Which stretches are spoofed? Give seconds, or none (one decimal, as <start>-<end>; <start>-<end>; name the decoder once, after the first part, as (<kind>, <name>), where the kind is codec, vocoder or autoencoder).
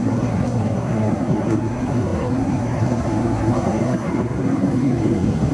0.0-5.5 (codec, SNAC)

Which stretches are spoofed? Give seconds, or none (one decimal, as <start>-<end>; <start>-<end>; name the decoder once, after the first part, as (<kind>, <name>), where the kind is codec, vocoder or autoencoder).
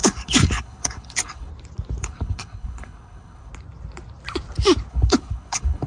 0.0-1.5 (codec, HILCodec); 2.0-3.5; 4.9-5.9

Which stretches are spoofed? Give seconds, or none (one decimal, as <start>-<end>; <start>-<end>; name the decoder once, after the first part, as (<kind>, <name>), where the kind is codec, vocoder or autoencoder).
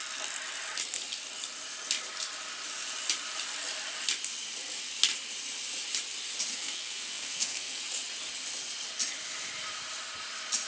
6.5-7.8 (codec, SNAC)